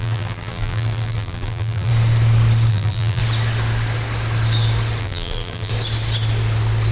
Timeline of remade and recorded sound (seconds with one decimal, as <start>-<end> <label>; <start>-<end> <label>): 0.0-1.9 remade; 1.9-2.7 recorded; 2.7-3.2 remade; 3.2-5.0 recorded; 5.0-5.7 remade; 5.7-6.9 recorded